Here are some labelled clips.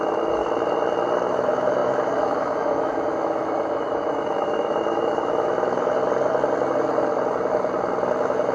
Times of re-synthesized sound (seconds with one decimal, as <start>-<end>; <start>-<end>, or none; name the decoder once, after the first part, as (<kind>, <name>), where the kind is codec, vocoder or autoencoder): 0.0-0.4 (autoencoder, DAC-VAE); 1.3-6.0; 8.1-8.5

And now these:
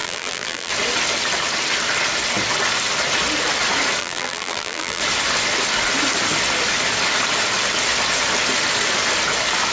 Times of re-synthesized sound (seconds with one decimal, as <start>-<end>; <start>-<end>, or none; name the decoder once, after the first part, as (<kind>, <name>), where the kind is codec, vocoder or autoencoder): 0.0-0.7 (vocoder, BigVGAN v2); 4.0-5.0

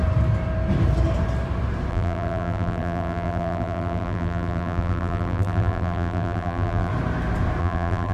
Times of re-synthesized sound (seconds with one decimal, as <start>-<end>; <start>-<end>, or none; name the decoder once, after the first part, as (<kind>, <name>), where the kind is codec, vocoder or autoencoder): 1.9-6.9 (vocoder, BigVGAN v2); 7.6-8.1

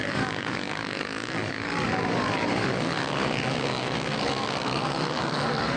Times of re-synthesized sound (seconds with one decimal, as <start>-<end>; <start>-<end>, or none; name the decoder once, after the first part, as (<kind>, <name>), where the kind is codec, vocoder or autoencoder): 0.0-5.8 (codec, DAC)

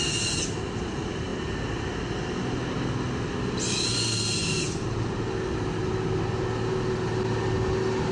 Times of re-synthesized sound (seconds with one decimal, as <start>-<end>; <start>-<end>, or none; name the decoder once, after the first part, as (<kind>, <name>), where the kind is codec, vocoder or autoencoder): none

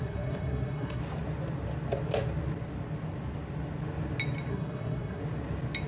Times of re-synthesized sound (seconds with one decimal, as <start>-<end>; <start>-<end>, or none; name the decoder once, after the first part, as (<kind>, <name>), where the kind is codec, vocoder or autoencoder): 0.0-1.0 (codec, SNAC); 4.5-5.2

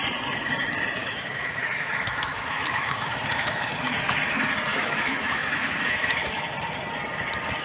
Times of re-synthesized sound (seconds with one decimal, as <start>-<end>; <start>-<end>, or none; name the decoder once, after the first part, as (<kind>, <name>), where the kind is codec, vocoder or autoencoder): 1.0-3.7 (autoencoder, DAC-VAE); 4.7-6.4